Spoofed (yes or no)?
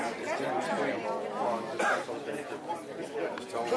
no